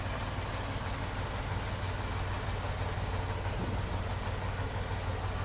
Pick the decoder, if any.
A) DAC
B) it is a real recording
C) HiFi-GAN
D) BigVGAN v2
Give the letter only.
B